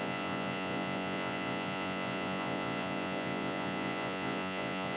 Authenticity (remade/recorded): remade